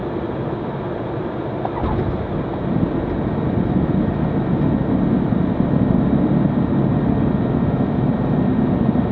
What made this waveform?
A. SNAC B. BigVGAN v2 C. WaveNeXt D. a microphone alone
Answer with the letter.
D